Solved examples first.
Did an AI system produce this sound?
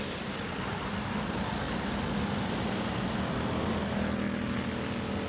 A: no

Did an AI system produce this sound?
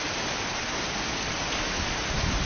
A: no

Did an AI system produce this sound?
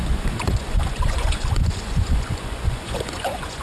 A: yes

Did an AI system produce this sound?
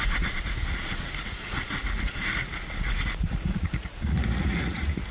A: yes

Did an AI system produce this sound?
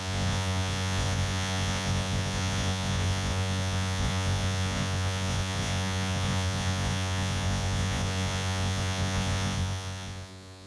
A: yes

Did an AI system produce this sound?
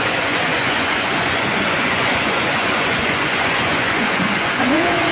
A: yes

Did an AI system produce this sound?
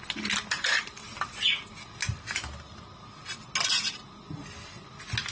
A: no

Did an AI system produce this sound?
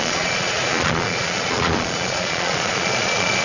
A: yes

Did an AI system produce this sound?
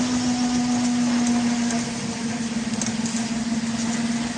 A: no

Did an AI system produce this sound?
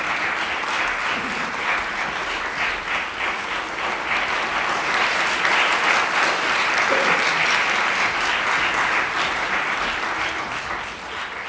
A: no